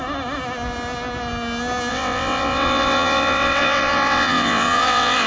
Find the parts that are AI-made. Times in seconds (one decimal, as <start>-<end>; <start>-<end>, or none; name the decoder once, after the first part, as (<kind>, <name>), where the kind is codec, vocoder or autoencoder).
1.9-5.3 (vocoder, WaveNeXt)